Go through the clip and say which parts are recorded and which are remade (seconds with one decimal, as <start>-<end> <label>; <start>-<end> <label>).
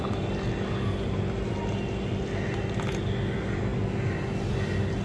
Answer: 0.0-5.0 recorded